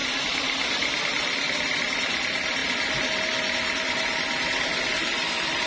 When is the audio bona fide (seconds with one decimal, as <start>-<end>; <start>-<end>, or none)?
0.0-4.9